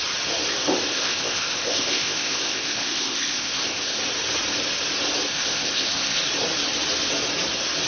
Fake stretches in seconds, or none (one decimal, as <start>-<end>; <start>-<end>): 0.9-4.0; 5.3-6.2